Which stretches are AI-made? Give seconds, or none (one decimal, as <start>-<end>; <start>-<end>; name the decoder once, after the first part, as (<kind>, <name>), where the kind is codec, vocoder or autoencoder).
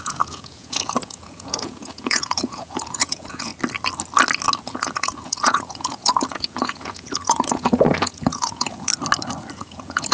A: 0.0-3.5 (vocoder, Vocos); 4.6-8.9; 9.5-10.1